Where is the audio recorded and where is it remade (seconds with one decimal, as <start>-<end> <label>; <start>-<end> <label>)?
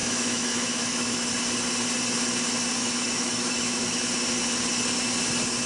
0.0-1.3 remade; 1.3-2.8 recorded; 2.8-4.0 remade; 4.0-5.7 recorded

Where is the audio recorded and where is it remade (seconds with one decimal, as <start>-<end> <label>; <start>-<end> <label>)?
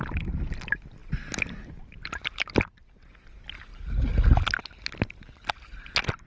0.0-6.3 recorded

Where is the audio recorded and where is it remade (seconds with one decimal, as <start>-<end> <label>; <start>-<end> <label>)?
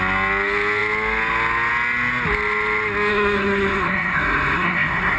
0.0-3.1 recorded; 3.1-5.2 remade